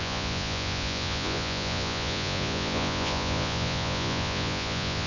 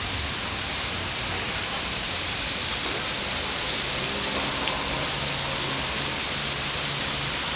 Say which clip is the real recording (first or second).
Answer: second